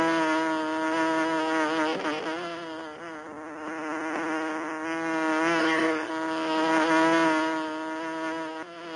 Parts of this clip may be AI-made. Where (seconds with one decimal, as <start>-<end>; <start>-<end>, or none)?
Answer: 5.6-6.1